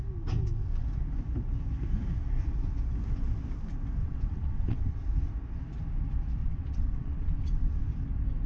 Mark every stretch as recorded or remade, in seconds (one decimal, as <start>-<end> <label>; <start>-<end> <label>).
0.0-4.0 recorded; 4.0-5.0 remade; 5.0-6.4 recorded; 6.4-7.8 remade; 7.8-8.5 recorded